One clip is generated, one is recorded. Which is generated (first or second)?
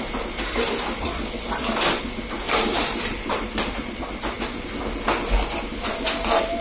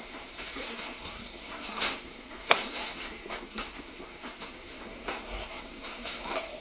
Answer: second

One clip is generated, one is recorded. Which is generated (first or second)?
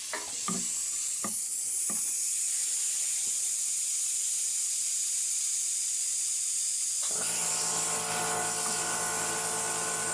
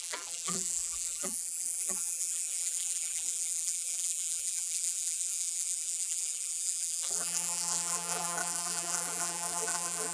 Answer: second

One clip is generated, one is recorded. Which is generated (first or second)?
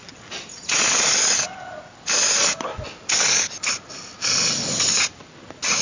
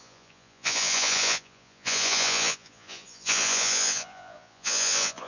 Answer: second